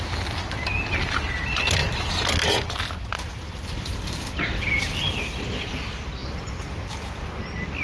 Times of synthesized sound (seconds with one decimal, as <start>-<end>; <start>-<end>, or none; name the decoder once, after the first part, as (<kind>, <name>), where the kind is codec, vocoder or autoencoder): 1.8-5.2 (vocoder, BigVGAN v2)